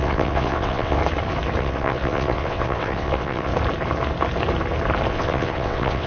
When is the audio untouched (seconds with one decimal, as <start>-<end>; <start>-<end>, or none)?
1.0-1.6; 3.5-5.1